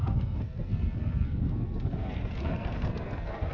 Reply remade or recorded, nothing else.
remade